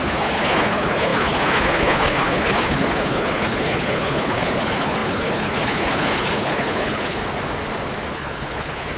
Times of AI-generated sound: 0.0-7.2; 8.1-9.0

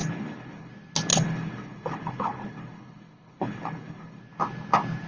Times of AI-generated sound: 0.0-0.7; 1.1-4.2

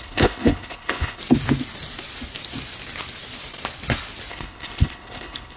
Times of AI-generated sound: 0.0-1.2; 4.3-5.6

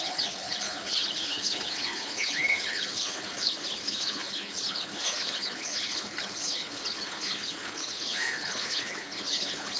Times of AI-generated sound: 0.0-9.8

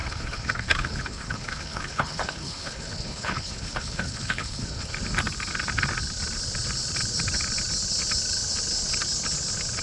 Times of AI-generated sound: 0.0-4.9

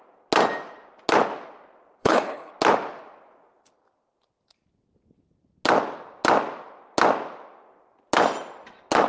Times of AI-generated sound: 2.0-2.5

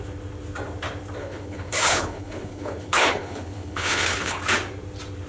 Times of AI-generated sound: 1.2-4.4

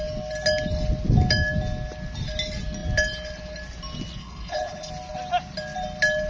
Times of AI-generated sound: 4.2-4.9